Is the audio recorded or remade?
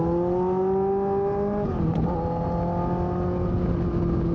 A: recorded